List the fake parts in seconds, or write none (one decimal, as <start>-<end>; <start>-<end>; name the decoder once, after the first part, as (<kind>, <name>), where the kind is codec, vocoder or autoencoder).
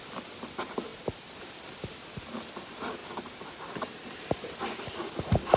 0.9-2.0 (vocoder, BigVGAN v2); 3.0-5.1